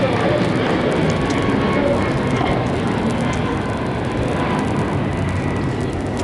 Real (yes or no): yes